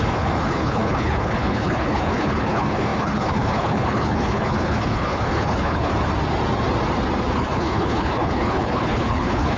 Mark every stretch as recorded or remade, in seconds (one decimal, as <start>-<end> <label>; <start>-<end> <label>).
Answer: 0.0-5.9 remade; 5.9-7.3 recorded; 7.3-9.6 remade